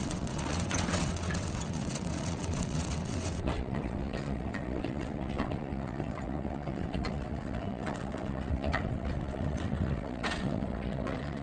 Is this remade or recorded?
remade